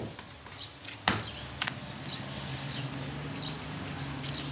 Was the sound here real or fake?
real